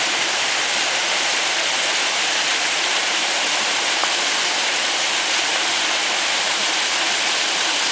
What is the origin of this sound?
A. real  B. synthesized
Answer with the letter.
B